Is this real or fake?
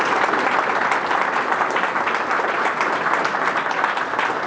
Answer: real